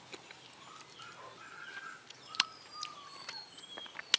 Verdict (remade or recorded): recorded